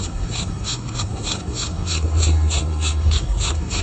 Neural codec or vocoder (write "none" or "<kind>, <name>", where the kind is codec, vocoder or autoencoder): codec, SNAC